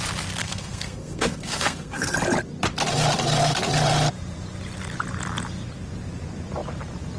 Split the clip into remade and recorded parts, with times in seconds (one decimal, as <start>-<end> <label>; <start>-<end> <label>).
0.0-0.4 recorded; 0.4-2.1 remade; 2.1-7.2 recorded

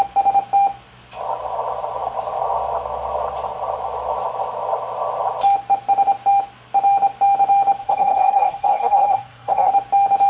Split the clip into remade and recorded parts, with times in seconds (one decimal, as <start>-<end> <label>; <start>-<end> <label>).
0.0-7.8 recorded; 7.8-9.7 remade; 9.7-10.3 recorded

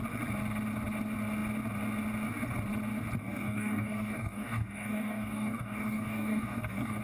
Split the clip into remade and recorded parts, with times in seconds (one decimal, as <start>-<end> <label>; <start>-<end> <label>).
0.0-3.2 recorded; 3.2-7.0 remade

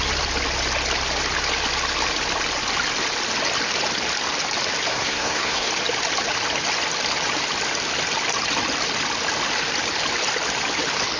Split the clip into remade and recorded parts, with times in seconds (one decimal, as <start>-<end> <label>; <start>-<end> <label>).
0.0-4.9 recorded; 4.9-5.7 remade; 5.7-11.2 recorded

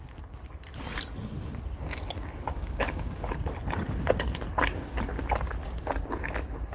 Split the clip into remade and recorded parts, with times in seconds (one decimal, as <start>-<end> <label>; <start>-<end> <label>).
0.0-2.5 recorded; 2.5-3.3 remade; 3.3-6.7 recorded

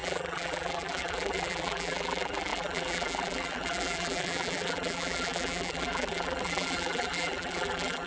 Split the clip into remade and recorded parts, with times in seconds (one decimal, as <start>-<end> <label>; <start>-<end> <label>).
0.0-8.1 remade

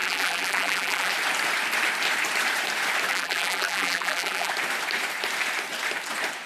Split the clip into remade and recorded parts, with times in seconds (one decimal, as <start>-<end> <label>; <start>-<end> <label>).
0.0-1.1 remade; 1.1-3.1 recorded; 3.1-4.5 remade; 4.5-6.5 recorded